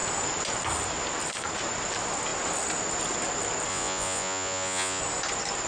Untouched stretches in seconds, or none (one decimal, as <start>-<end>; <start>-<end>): 0.0-3.7; 5.0-5.7